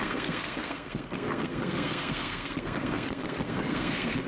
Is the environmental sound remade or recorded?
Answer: remade